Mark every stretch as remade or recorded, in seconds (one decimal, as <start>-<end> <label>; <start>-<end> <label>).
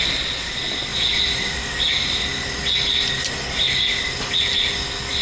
0.0-5.2 recorded